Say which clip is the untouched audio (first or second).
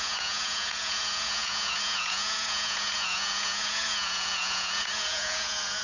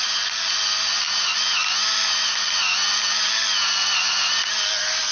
second